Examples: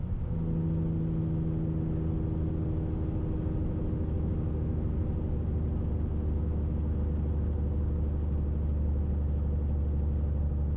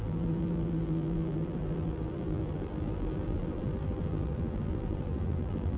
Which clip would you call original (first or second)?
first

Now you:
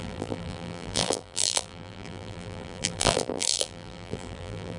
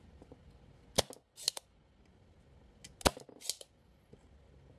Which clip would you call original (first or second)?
second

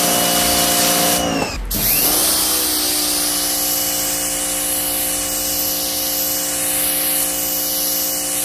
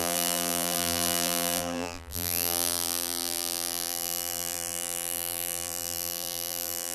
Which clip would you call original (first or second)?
first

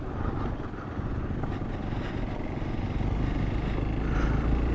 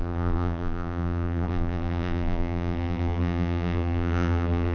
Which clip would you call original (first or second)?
first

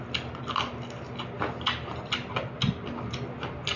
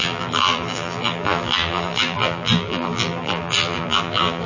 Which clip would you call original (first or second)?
first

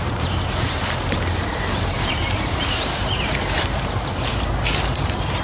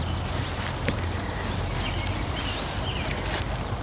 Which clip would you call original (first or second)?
second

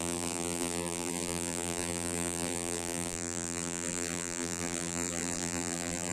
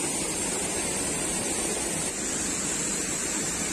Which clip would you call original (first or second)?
second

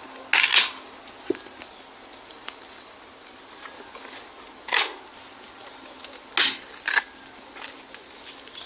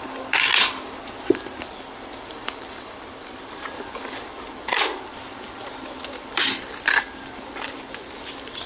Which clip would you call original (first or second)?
first